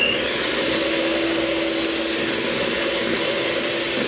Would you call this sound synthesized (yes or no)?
no